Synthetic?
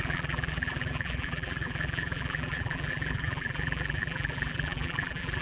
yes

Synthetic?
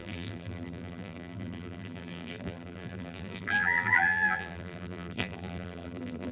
yes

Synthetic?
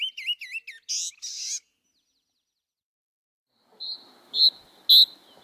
no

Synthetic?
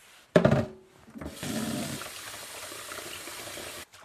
yes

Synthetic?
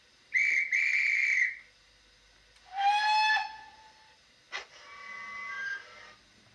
no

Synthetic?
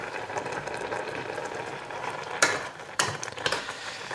yes